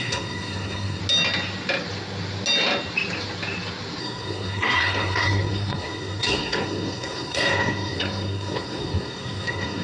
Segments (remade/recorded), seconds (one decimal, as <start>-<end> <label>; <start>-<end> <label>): 0.0-1.0 remade; 1.0-4.0 recorded; 4.0-9.8 remade